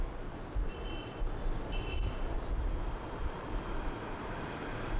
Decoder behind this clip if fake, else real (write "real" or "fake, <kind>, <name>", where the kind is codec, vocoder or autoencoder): real